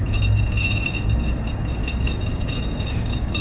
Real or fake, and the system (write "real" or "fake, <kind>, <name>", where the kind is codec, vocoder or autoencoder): fake, codec, DAC